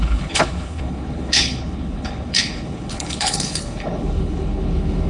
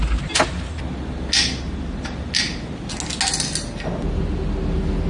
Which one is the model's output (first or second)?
first